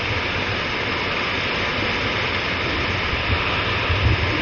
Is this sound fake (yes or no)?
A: no